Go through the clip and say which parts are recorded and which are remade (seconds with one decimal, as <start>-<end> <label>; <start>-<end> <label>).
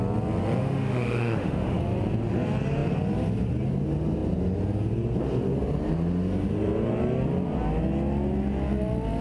0.0-0.6 recorded; 0.6-1.8 remade; 1.8-9.2 recorded